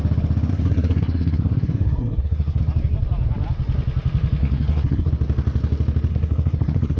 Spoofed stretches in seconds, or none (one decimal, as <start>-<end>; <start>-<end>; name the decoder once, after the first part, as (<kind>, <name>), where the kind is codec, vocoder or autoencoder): 0.5-2.6 (codec, SNAC); 4.4-5.1; 6.1-7.0